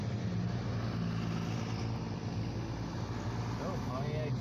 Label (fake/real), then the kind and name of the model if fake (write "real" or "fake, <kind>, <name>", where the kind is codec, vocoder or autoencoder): real